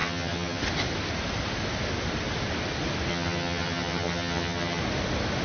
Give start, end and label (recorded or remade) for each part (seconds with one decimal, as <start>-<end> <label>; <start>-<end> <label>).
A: 0.0-0.6 remade; 0.6-3.1 recorded; 3.1-4.8 remade; 4.8-5.4 recorded